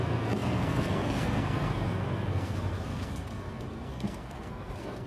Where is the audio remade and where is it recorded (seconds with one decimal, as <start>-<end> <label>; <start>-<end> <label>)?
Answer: 0.0-5.1 remade

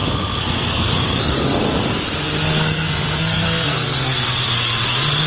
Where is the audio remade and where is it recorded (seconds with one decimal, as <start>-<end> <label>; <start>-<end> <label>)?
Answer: 0.0-1.2 remade; 1.2-2.5 recorded; 2.5-4.3 remade; 4.3-5.3 recorded

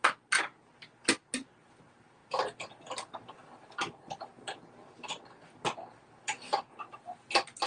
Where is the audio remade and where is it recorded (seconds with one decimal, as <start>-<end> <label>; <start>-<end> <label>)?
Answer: 0.0-7.7 recorded

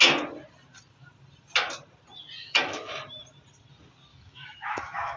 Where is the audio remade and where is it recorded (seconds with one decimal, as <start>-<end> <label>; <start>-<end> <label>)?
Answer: 0.0-2.4 recorded; 2.4-2.9 remade; 2.9-4.1 recorded; 4.1-5.2 remade

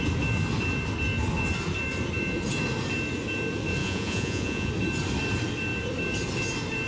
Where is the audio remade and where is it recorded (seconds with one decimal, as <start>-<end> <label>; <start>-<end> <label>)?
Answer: 0.0-3.8 recorded; 3.8-4.7 remade; 4.7-6.9 recorded

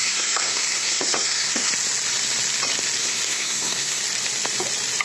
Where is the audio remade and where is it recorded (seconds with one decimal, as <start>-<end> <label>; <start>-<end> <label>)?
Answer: 0.0-1.7 remade; 1.7-3.0 recorded; 3.0-4.0 remade; 4.0-5.0 recorded